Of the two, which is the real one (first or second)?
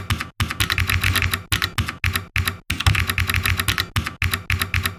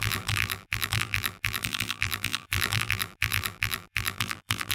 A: first